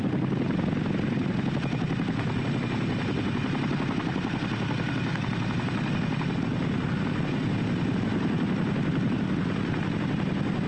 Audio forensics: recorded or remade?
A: recorded